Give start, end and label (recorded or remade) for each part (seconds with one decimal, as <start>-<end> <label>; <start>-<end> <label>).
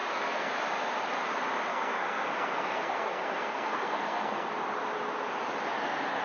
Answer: 0.0-0.5 remade; 0.5-1.7 recorded; 1.7-4.5 remade; 4.5-6.2 recorded